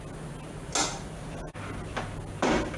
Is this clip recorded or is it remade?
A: recorded